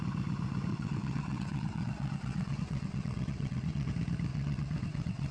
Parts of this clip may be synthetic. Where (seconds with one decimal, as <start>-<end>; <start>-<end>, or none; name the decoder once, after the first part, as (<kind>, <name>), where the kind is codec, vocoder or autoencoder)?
0.7-3.9 (vocoder, WaveNeXt); 4.3-5.3